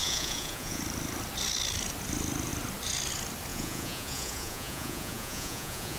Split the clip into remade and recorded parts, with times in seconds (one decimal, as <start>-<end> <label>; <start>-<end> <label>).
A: 0.0-0.8 remade; 0.8-3.5 recorded; 3.5-6.0 remade